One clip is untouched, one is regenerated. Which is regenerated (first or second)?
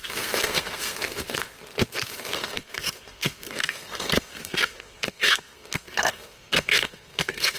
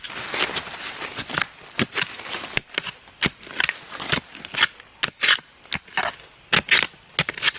first